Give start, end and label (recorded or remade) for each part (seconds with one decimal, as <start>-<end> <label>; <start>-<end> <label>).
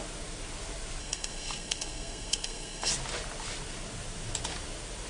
0.0-1.0 recorded; 1.0-2.9 remade; 2.9-5.1 recorded